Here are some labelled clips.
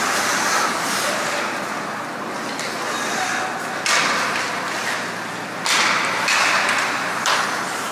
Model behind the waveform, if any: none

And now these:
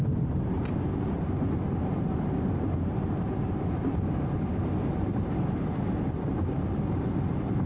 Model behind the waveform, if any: none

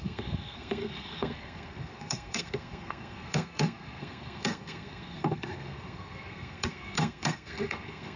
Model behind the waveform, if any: codec, SNAC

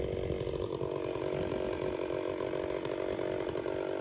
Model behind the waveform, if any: none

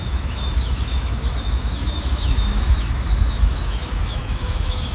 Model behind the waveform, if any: autoencoder, DAC-VAE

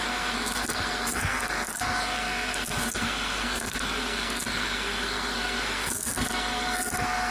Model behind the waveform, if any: codec, SNAC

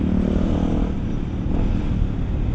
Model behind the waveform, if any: none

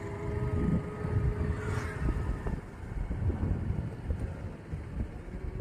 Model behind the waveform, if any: none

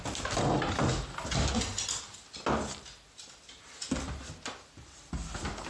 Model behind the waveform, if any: none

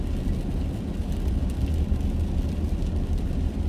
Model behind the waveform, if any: none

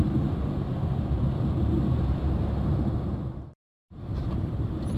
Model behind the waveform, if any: vocoder, BigVGAN v2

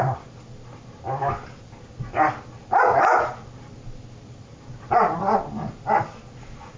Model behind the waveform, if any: none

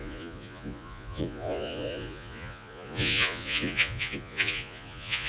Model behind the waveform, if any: vocoder, Vocos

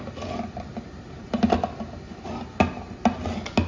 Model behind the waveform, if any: none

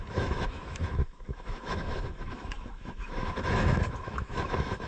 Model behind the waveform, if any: autoencoder, DAC-VAE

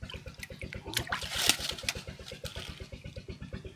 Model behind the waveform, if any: none